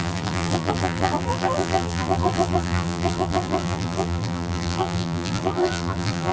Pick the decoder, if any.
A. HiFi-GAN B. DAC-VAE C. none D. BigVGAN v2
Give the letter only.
D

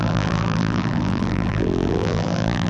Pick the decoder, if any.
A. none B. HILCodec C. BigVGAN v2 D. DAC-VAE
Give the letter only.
C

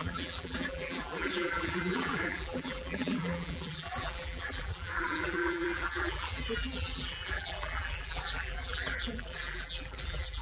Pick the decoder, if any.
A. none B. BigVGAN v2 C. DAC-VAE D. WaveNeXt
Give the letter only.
B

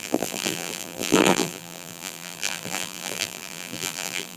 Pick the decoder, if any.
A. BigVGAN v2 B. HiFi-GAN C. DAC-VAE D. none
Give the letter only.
A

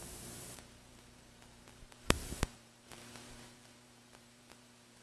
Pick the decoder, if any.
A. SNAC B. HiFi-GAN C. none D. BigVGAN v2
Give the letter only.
D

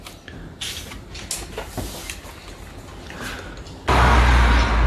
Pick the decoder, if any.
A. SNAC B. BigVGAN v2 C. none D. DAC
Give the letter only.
C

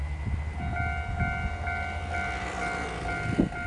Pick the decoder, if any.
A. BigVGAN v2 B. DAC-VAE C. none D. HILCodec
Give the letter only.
C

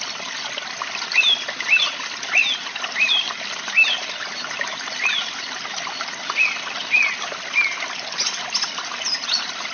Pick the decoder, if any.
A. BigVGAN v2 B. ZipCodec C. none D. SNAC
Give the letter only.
C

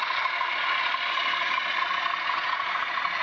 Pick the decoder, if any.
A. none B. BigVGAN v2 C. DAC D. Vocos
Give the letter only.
A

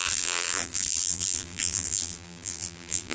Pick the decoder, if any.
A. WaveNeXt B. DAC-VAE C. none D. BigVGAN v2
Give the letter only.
D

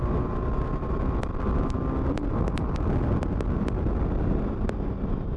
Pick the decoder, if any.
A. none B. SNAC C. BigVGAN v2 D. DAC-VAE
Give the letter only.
A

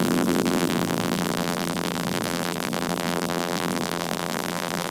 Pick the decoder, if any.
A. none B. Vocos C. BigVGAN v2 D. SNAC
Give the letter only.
C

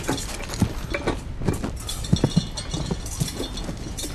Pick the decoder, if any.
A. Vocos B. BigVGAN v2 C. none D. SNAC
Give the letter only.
C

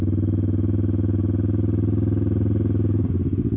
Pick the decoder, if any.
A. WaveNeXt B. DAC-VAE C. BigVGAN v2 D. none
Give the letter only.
D